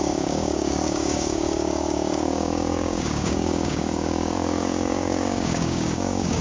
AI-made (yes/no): yes